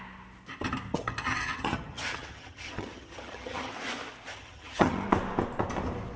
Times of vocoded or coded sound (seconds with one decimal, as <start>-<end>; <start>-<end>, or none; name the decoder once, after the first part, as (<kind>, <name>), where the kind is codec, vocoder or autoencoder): 0.9-3.7 (vocoder, HiFi-GAN); 4.3-5.1